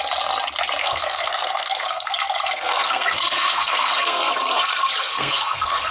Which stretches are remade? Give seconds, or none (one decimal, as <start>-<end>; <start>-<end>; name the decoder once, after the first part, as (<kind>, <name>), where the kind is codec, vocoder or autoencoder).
0.8-4.3 (codec, SNAC); 5.0-5.9

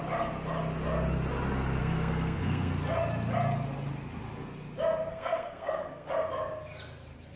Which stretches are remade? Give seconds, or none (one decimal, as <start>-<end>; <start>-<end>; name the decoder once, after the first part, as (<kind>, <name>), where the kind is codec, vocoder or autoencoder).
1.8-2.7 (codec, SNAC); 5.1-6.1

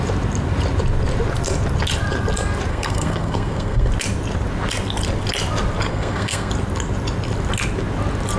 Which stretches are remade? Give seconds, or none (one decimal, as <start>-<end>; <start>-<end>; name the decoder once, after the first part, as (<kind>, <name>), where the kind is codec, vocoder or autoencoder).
2.7-3.9 (codec, SNAC); 5.9-6.5

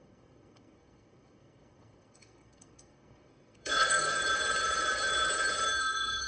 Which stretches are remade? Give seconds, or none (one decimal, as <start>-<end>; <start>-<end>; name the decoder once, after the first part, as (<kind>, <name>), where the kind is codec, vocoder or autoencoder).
0.0-4.2 (codec, SNAC); 5.8-6.3

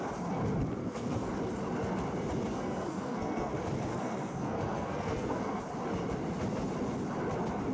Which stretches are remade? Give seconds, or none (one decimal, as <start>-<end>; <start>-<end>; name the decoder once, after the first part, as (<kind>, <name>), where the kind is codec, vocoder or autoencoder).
0.8-1.3 (codec, SNAC); 2.5-3.5; 3.9-5.6

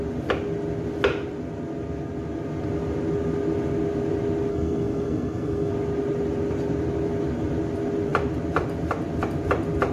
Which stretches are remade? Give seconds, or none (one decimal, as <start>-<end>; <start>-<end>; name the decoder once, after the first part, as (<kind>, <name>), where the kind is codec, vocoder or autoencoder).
4.5-5.7 (codec, SNAC)

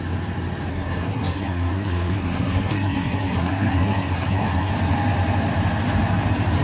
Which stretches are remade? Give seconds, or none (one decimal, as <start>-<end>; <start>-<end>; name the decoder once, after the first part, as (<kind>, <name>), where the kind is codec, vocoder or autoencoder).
0.7-4.7 (codec, SNAC)

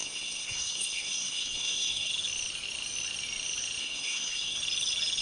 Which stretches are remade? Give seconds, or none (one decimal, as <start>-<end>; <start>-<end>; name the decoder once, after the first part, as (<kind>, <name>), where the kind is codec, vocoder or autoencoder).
0.0-2.1 (codec, SNAC); 3.8-4.6